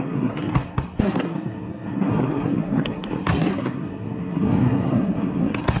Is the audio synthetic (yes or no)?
yes